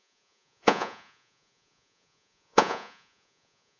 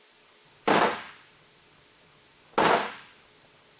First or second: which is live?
second